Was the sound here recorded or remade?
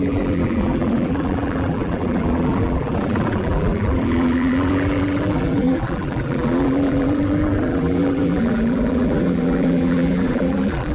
remade